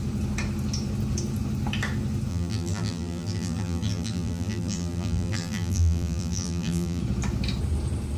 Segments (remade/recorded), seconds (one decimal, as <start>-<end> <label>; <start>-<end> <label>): 0.0-2.3 recorded; 2.3-7.0 remade; 7.0-8.2 recorded